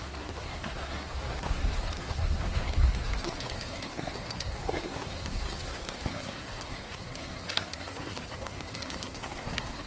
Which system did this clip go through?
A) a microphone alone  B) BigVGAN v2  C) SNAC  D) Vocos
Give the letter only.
C